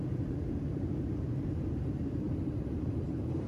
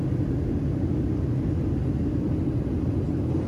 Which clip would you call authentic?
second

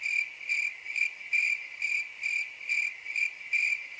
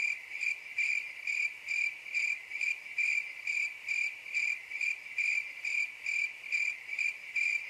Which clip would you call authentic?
first